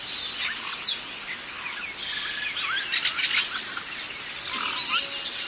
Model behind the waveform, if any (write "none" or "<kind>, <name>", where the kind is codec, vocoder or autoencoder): none